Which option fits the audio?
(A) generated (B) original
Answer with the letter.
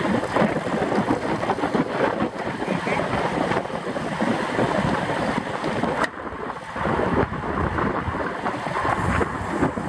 B